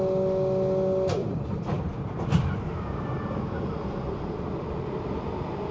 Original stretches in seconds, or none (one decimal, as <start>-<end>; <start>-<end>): 0.0-1.2; 4.6-5.7